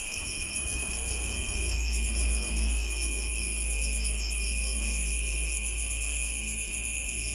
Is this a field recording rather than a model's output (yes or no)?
no